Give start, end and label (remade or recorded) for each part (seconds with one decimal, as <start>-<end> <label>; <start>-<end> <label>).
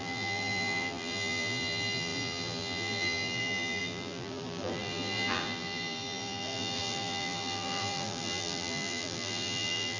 0.0-10.0 remade